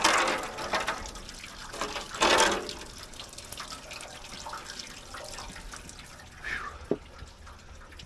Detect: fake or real real